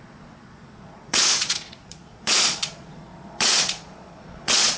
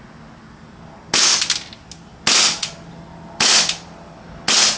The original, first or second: second